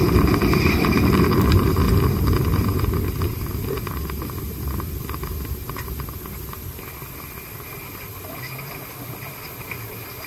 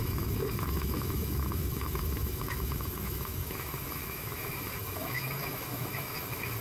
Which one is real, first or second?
first